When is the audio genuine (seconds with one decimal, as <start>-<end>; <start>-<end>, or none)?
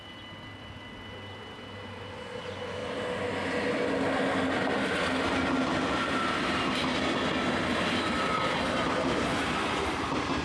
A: 0.0-10.4